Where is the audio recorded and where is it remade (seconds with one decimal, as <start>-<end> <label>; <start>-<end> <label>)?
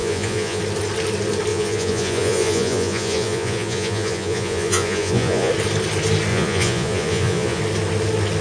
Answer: 0.0-0.6 remade; 0.6-1.5 recorded; 1.5-5.5 remade; 5.5-6.3 recorded; 6.3-7.6 remade; 7.6-8.4 recorded